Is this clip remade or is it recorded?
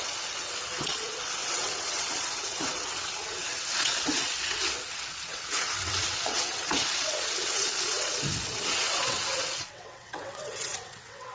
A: remade